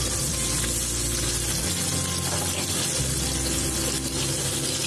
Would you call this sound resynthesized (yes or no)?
no